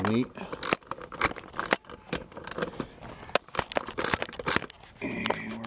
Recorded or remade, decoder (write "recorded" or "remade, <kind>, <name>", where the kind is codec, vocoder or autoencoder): recorded